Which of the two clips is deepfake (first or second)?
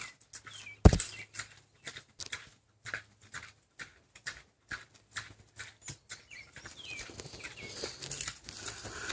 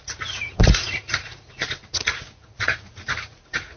second